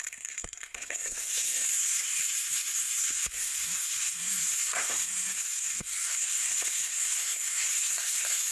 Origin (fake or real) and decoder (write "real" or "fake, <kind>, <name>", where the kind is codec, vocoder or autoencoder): fake, codec, SNAC